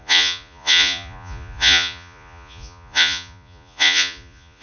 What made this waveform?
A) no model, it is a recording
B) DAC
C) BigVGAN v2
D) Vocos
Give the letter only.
D